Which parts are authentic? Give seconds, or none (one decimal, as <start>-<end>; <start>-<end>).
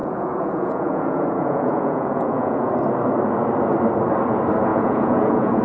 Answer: 2.7-4.7